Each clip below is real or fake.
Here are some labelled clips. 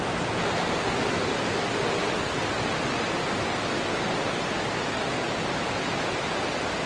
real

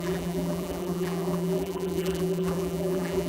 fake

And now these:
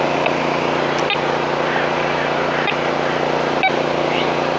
real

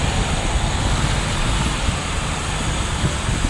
real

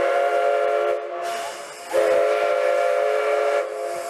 real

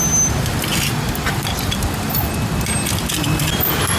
real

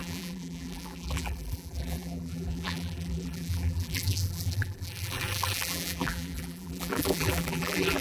fake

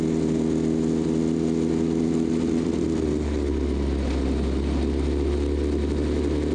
real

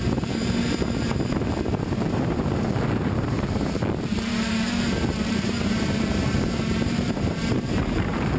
fake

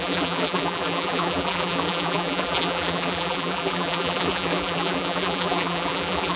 fake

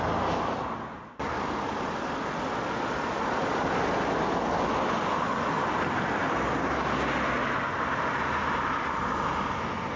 real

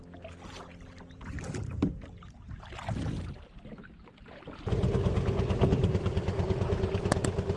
real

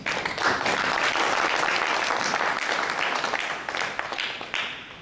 fake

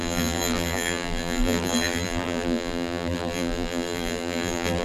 fake